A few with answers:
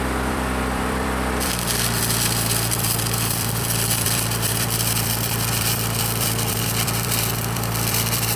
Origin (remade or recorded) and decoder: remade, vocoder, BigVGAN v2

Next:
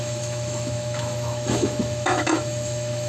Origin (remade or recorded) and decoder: remade, autoencoder, DAC-VAE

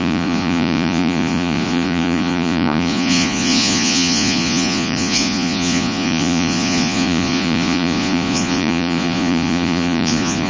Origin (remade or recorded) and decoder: remade, vocoder, Vocos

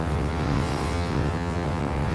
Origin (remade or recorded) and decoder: remade, vocoder, WaveNeXt